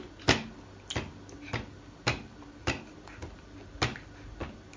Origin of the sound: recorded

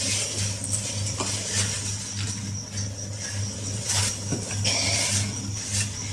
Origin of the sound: recorded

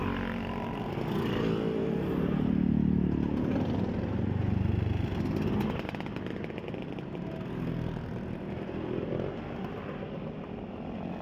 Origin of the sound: recorded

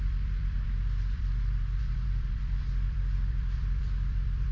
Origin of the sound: remade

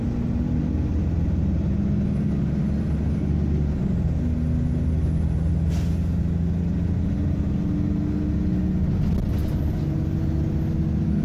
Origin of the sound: recorded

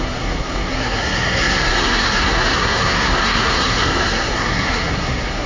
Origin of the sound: remade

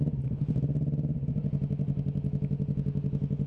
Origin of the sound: recorded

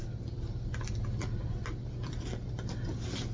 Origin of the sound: recorded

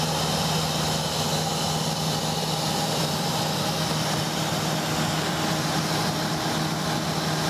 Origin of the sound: recorded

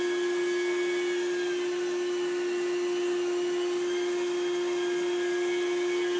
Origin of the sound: recorded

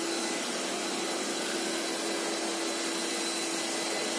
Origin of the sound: recorded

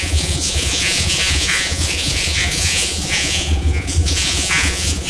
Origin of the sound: remade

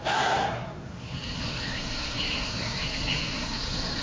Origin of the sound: remade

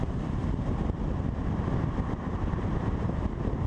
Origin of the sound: remade